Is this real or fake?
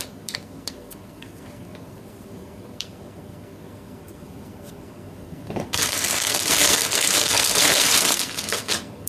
fake